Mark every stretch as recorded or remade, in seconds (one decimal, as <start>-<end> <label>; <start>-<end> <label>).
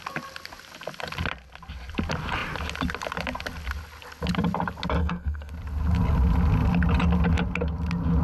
0.0-5.0 recorded; 5.0-5.5 remade; 5.5-8.2 recorded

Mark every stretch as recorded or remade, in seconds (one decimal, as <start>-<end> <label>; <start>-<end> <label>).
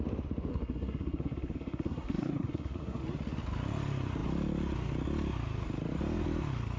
0.0-0.5 recorded; 0.5-3.0 remade; 3.0-6.8 recorded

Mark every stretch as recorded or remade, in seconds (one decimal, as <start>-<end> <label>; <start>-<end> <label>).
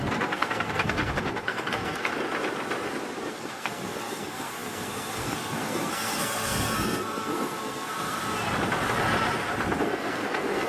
0.0-2.1 remade; 2.1-3.3 recorded; 3.3-8.2 remade; 8.2-9.8 recorded; 9.8-10.7 remade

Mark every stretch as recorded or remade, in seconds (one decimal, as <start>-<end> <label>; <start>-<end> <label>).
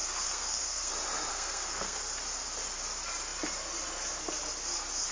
0.0-0.9 remade; 0.9-1.3 recorded; 1.3-2.0 remade; 2.0-5.1 recorded